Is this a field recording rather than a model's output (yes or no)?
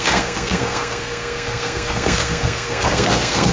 no